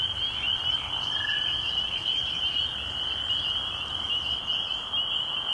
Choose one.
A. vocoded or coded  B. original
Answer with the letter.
B